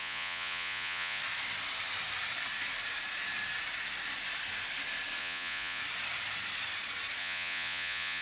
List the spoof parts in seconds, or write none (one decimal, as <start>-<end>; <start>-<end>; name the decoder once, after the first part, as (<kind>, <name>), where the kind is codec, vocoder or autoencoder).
0.0-1.2 (vocoder, Vocos); 5.2-5.8; 7.2-8.2